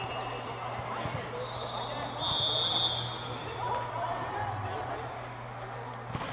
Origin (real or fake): real